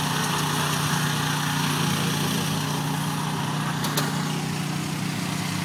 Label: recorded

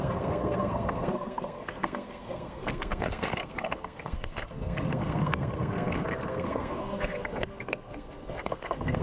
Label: remade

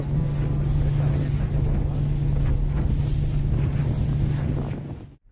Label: recorded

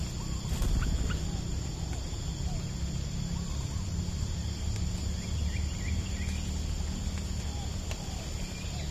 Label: recorded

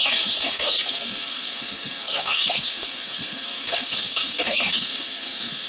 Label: remade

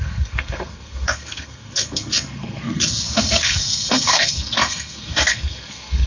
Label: remade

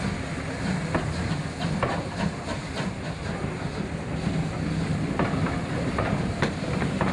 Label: recorded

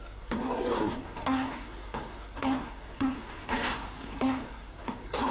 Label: remade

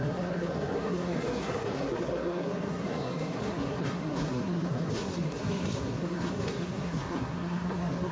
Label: remade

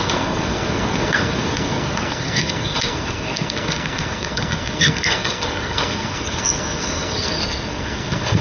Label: remade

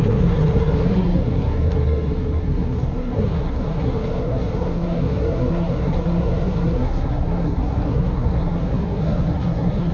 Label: remade